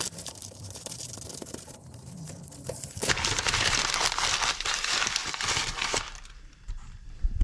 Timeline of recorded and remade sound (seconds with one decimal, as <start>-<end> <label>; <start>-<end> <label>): 0.0-5.2 remade; 5.2-5.8 recorded; 5.8-7.4 remade

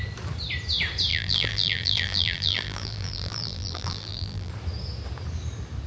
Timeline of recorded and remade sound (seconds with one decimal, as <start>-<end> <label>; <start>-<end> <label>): 0.0-1.1 recorded; 1.1-4.5 remade; 4.5-5.9 recorded

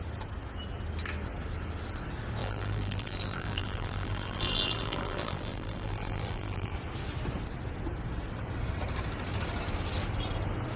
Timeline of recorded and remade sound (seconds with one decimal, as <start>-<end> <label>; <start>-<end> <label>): 0.0-2.4 recorded; 2.4-6.7 remade; 6.7-10.8 recorded

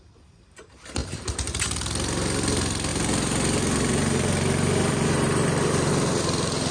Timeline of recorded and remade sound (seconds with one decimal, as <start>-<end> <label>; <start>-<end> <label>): 0.0-1.0 recorded; 1.0-1.6 remade; 1.6-2.9 recorded; 2.9-5.9 remade; 5.9-6.7 recorded

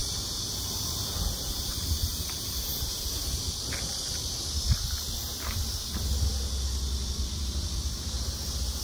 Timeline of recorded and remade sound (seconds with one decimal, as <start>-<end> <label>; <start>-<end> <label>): 0.0-3.2 remade; 3.2-8.8 recorded

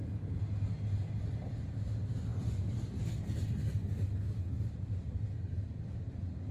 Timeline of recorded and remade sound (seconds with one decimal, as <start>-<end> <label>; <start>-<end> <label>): 0.0-6.5 recorded

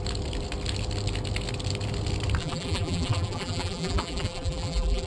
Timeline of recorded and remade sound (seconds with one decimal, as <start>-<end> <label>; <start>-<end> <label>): 0.0-2.4 recorded; 2.4-5.1 remade

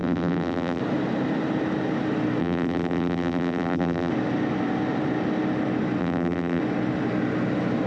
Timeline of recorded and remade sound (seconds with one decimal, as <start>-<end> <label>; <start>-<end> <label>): 0.0-0.8 remade; 0.8-2.4 recorded; 2.4-4.1 remade; 4.1-6.0 recorded; 6.0-6.6 remade; 6.6-7.9 recorded